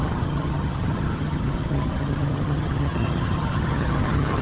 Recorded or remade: remade